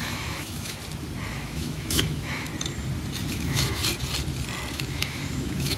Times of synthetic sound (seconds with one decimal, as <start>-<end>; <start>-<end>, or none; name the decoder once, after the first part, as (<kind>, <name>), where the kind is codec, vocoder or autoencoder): 0.0-0.8 (autoencoder, DAC-VAE); 1.3-2.5; 3.3-3.8; 4.7-5.8